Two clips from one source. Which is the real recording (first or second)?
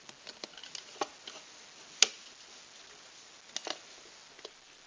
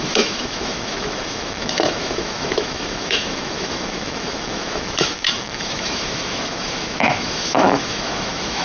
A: first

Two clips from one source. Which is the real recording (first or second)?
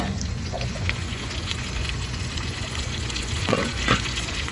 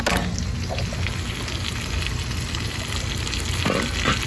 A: second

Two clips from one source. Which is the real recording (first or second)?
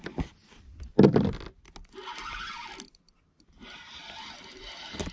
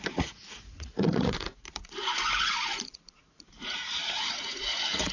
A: first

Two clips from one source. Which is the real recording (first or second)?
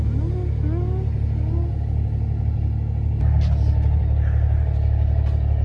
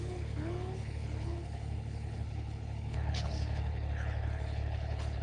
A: first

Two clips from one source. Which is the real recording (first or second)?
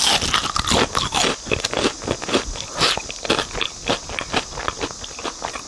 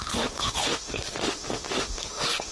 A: first